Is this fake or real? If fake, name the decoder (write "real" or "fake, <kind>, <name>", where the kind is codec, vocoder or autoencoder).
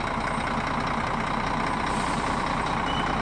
real